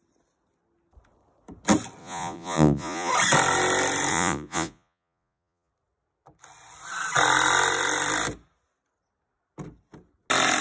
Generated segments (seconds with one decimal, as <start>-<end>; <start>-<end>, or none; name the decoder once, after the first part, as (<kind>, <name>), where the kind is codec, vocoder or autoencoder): 2.0-3.1 (vocoder, Vocos); 4.1-5.7

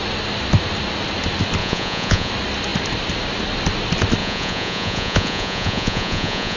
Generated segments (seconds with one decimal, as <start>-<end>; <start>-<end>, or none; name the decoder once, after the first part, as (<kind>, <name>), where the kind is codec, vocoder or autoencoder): 1.6-2.3 (vocoder, Vocos); 4.2-6.6

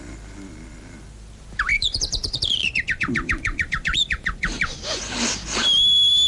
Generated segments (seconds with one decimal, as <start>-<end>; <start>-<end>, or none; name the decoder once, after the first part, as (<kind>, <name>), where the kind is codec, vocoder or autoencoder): 1.7-5.0 (vocoder, Vocos)

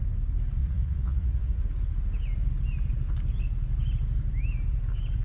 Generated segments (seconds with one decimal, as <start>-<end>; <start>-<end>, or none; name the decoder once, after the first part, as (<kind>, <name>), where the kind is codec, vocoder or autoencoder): 0.6-1.6 (vocoder, Vocos)

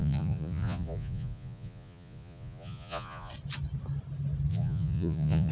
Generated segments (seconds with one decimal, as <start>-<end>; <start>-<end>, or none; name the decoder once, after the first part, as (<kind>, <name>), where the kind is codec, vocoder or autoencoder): 0.0-3.3 (vocoder, Vocos); 4.5-5.5

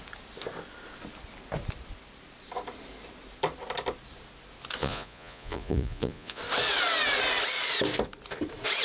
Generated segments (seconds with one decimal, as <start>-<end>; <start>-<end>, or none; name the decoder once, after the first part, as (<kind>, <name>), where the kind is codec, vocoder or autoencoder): 4.8-6.4 (vocoder, Vocos)

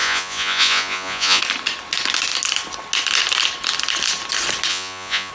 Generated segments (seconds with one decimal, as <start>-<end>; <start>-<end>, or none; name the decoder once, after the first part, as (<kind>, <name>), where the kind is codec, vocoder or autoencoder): 0.0-1.4 (vocoder, Vocos); 4.7-5.3